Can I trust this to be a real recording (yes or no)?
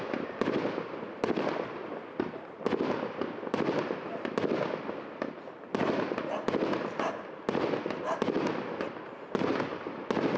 no